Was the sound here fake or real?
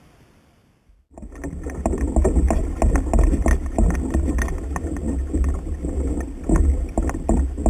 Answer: real